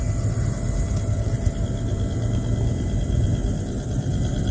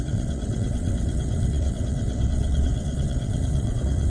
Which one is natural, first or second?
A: first